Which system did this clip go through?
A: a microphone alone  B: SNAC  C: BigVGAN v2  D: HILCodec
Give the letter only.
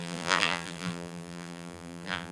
C